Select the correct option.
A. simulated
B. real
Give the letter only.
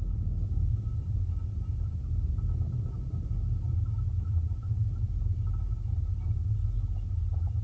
B